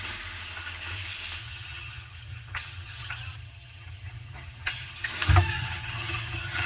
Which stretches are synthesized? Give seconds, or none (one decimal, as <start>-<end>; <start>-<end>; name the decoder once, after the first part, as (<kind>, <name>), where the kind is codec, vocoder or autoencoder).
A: 1.4-5.1 (vocoder, HiFi-GAN); 5.5-6.7